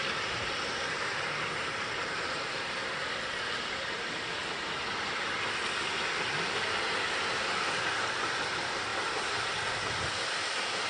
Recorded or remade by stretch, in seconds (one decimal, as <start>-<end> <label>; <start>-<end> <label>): 0.0-2.8 remade; 2.8-3.4 recorded; 3.4-4.4 remade; 4.4-7.4 recorded; 7.4-8.9 remade; 8.9-9.5 recorded; 9.5-10.9 remade